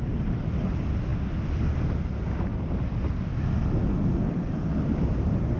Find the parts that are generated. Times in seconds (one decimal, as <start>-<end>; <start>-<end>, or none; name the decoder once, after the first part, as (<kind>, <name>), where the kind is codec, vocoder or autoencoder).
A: 3.9-4.5 (codec, SNAC)